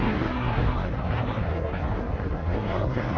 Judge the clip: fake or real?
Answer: fake